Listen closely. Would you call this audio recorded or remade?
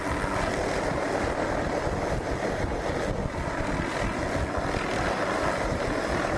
recorded